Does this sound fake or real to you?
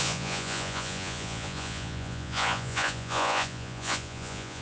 fake